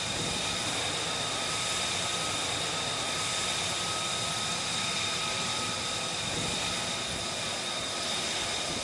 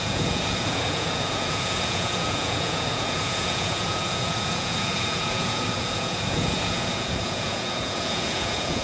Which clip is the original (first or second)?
first